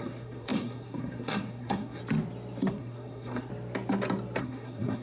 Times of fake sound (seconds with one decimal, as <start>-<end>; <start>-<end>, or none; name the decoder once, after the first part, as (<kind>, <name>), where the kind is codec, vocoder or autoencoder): 0.0-2.0 (codec, SNAC); 2.7-3.5; 4.4-5.0